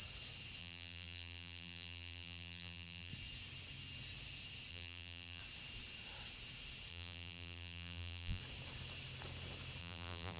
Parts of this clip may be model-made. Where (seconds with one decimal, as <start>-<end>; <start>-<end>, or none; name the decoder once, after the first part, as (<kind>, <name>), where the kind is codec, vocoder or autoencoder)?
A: 0.6-3.1 (vocoder, BigVGAN v2); 4.7-5.4; 6.9-8.4; 9.8-10.4